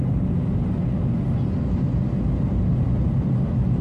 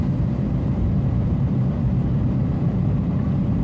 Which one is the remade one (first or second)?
second